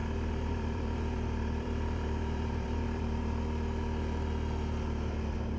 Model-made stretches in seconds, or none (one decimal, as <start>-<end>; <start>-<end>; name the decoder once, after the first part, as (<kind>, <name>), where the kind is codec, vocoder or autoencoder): 0.0-3.4 (vocoder, BigVGAN v2)